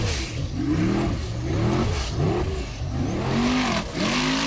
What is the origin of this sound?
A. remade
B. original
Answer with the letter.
B